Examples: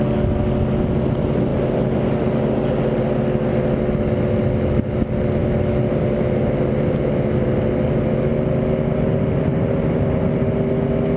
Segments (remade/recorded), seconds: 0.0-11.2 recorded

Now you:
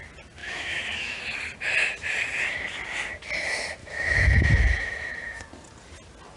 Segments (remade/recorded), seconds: 0.0-0.4 recorded; 0.4-1.2 remade; 1.2-3.8 recorded; 3.8-5.4 remade; 5.4-6.4 recorded